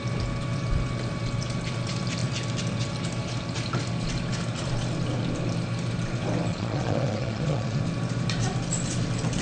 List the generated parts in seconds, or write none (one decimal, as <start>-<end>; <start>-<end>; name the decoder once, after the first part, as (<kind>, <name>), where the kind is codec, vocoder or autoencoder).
6.5-7.8 (vocoder, Vocos)